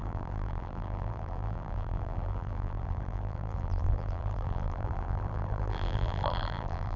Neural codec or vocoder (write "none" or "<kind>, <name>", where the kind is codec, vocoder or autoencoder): vocoder, BigVGAN v2